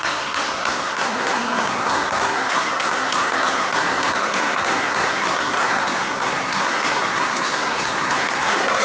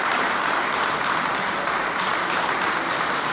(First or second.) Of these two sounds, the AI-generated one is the first